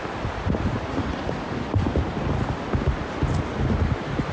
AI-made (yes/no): no